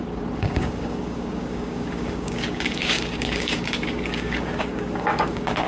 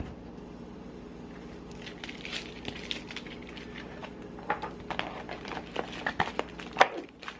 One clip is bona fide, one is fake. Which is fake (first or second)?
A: first